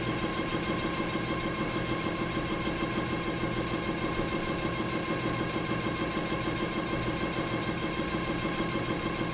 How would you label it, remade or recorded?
recorded